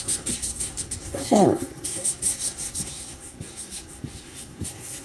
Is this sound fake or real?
fake